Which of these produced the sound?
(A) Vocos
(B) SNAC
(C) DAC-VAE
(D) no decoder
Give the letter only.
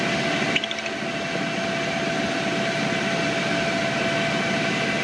D